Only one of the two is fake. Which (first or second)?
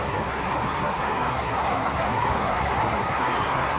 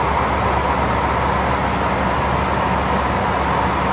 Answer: first